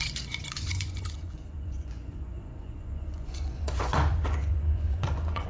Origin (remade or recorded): remade